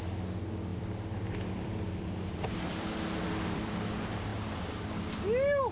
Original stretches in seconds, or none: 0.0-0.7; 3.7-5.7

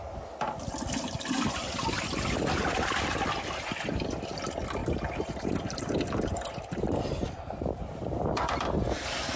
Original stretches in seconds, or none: 0.0-4.8; 8.3-9.4

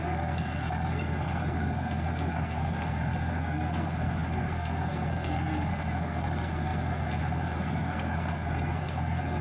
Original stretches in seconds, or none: none